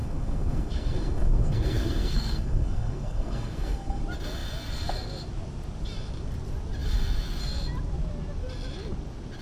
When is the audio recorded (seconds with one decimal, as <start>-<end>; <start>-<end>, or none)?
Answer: 4.0-9.4